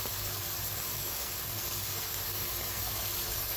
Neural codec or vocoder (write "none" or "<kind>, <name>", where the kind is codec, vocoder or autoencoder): codec, SNAC